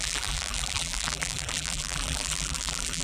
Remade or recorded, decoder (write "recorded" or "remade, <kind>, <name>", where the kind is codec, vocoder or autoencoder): remade, vocoder, BigVGAN v2